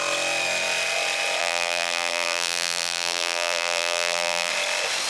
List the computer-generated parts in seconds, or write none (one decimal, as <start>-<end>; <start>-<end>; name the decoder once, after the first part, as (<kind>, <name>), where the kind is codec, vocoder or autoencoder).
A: 1.4-4.5 (vocoder, BigVGAN v2)